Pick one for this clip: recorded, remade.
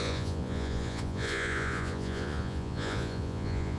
remade